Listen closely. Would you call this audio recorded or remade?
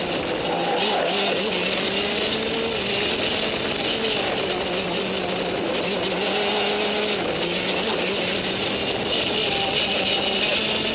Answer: recorded